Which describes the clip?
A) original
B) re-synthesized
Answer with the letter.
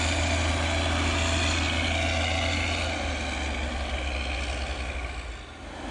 A